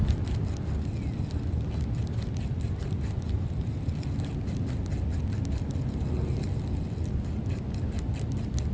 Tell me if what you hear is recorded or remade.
recorded